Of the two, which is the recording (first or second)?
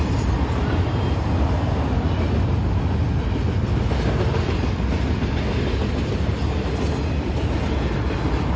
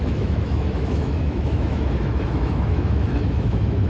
first